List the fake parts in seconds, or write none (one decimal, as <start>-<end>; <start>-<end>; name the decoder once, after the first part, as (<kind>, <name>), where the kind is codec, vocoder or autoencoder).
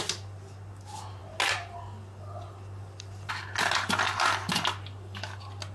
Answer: none